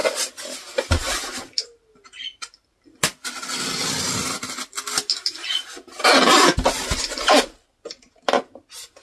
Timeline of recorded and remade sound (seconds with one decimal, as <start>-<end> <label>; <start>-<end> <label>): 0.0-9.0 recorded